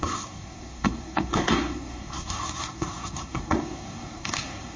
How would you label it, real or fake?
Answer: fake